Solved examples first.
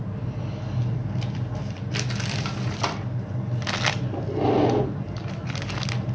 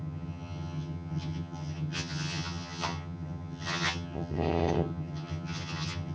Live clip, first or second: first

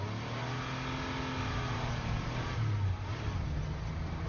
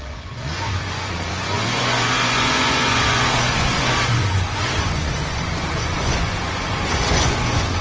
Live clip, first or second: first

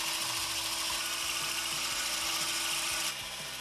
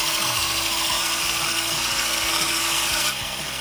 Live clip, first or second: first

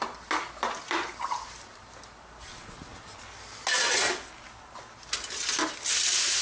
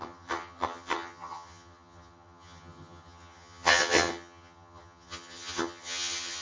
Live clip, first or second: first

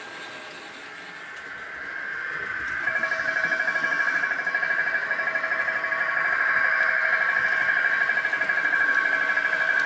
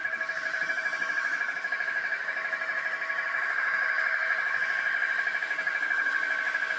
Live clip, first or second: first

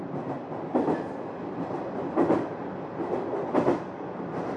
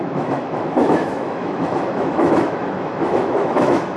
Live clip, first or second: first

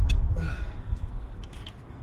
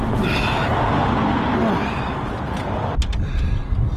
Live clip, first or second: second